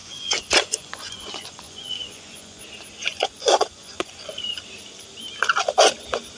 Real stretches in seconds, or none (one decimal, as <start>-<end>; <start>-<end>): 2.6-3.0; 4.4-6.4